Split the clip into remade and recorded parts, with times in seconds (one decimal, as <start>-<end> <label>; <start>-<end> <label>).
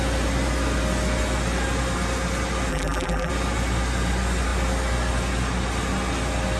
0.0-2.7 recorded; 2.7-3.3 remade; 3.3-6.6 recorded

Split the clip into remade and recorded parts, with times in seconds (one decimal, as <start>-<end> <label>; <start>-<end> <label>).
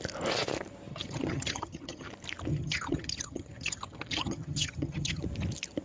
0.0-0.9 recorded; 0.9-2.1 remade; 2.1-2.5 recorded; 2.5-5.2 remade; 5.2-5.8 recorded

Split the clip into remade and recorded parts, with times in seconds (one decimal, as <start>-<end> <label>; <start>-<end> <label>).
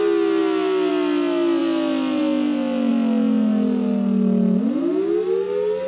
0.0-5.9 recorded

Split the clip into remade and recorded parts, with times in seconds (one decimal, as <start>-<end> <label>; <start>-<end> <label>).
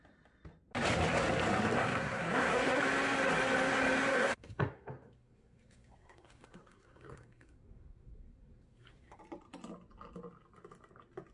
0.0-1.8 recorded; 1.8-2.8 remade; 2.8-4.1 recorded; 4.1-9.2 remade; 9.2-11.3 recorded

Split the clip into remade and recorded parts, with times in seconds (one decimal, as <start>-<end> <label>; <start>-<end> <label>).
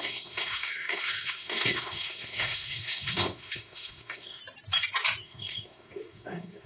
0.0-4.4 remade; 4.4-5.2 recorded; 5.2-6.7 remade